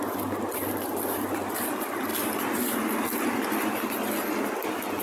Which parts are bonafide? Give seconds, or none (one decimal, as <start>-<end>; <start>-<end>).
0.0-5.0